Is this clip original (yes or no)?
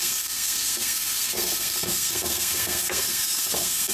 no